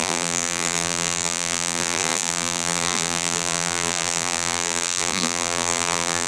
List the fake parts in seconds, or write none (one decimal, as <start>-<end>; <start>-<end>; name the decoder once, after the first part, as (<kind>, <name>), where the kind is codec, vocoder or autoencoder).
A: 0.0-6.3 (vocoder, BigVGAN v2)

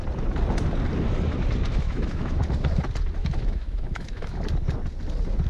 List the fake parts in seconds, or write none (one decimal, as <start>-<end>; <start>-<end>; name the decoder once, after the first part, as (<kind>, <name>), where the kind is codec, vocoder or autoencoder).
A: 1.7-2.4 (autoencoder, DAC-VAE); 3.2-4.4